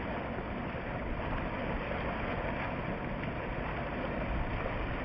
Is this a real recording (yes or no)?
yes